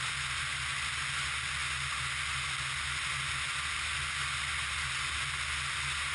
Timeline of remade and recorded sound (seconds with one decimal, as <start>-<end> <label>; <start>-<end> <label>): 0.0-6.1 recorded